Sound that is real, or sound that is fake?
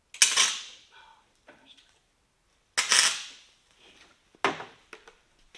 real